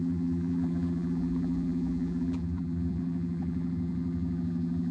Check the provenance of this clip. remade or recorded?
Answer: remade